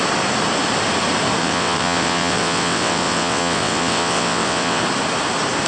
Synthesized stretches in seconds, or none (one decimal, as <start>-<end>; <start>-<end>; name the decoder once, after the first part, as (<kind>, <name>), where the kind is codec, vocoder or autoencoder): 1.4-4.8 (vocoder, WaveNeXt)

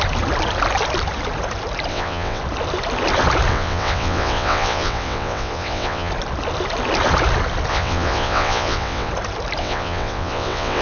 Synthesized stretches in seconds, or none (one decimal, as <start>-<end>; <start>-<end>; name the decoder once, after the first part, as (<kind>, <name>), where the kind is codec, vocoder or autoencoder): 1.9-2.4 (vocoder, WaveNeXt); 3.5-6.1; 7.7-9.1; 9.6-10.8

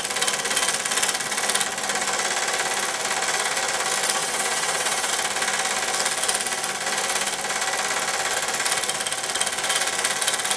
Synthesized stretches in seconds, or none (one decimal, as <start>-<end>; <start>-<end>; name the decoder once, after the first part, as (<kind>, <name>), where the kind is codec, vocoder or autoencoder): 4.2-5.1 (vocoder, WaveNeXt)

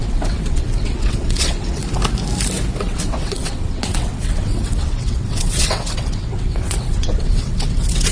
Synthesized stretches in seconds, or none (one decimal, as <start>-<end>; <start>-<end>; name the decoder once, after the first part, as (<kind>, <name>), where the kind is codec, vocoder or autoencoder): 0.0-1.8 (vocoder, WaveNeXt); 2.8-8.1

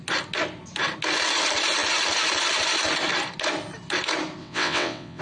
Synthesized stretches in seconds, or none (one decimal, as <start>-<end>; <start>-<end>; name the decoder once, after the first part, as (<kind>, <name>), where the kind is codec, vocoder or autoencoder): 4.4-5.2 (vocoder, WaveNeXt)

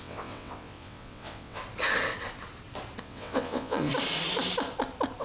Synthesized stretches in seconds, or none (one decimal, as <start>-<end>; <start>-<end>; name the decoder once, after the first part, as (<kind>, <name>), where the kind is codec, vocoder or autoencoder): 0.0-1.6 (vocoder, WaveNeXt); 3.0-3.9